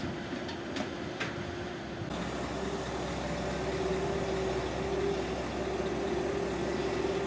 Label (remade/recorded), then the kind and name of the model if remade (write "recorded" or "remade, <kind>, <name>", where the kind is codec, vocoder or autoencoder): recorded